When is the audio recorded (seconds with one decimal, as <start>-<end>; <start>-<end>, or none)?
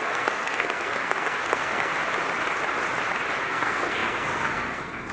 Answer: 1.9-3.4